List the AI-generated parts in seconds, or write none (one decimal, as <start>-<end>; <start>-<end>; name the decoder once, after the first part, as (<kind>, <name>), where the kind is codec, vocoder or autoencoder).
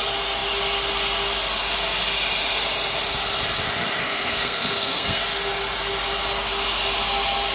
4.0-5.2 (codec, SNAC)